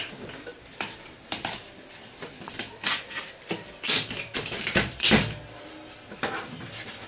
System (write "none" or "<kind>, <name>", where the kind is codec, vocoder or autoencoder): vocoder, BigVGAN v2